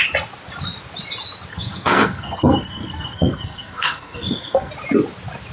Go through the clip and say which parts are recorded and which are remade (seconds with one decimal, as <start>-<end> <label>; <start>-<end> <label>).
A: 0.0-1.5 recorded; 1.5-4.7 remade; 4.7-5.5 recorded